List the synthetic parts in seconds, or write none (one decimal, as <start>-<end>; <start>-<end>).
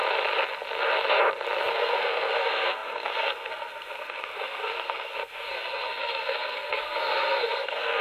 1.7-8.0